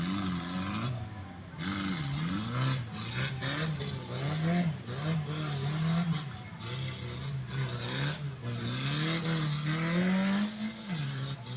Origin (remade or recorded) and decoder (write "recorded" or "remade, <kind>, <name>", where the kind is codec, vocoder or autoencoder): recorded